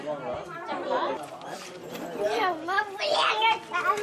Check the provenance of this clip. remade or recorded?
recorded